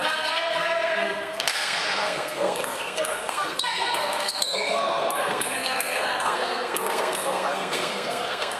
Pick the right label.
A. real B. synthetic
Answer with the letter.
B